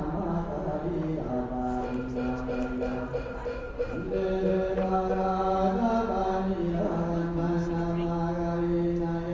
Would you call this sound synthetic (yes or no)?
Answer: no